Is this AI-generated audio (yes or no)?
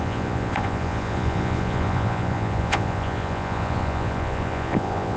yes